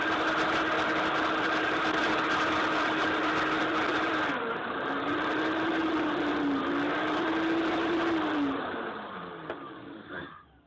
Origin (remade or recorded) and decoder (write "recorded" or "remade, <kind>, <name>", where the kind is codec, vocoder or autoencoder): remade, vocoder, BigVGAN v2